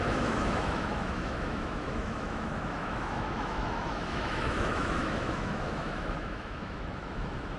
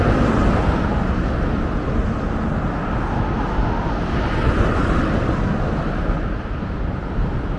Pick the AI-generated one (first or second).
first